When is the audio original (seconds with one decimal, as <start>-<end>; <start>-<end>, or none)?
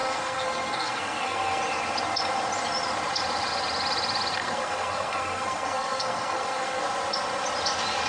1.6-4.4; 6.8-8.1